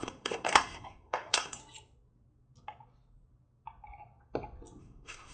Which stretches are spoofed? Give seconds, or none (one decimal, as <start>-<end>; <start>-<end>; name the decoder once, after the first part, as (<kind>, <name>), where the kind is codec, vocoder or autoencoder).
0.0-1.6 (codec, SNAC); 4.8-5.3